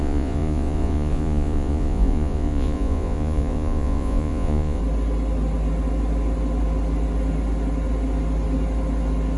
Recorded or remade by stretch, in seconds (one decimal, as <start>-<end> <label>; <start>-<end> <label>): 0.0-4.8 remade; 4.8-9.4 recorded